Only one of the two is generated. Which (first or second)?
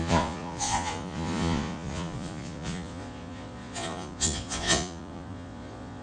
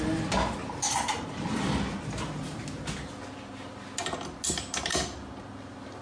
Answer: first